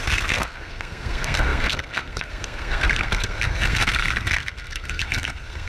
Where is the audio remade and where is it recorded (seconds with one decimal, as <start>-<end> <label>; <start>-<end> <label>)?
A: 0.0-5.7 remade